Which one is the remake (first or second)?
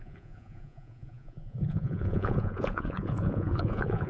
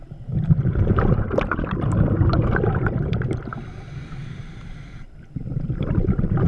first